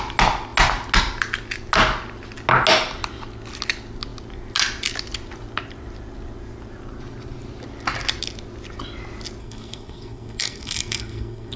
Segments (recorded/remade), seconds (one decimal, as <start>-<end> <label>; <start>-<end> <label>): 0.0-9.4 recorded; 9.4-11.6 remade